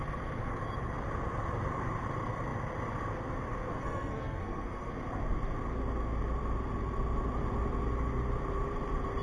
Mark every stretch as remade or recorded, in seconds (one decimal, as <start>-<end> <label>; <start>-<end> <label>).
0.0-3.7 recorded; 3.7-4.9 remade; 4.9-9.2 recorded